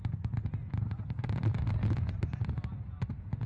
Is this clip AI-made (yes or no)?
no